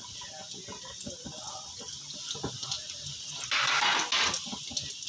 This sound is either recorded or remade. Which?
recorded